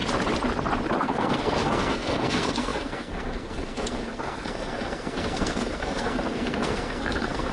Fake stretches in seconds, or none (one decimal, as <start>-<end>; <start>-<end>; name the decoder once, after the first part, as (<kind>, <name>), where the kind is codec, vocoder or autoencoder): 1.0-7.5 (codec, SNAC)